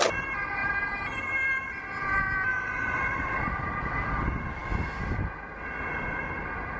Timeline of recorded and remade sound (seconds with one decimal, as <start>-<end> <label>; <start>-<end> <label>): 0.0-0.6 recorded; 0.6-1.2 remade; 1.2-2.5 recorded; 2.5-3.9 remade; 3.9-6.8 recorded